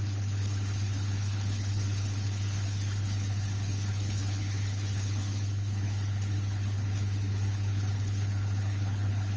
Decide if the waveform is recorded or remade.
remade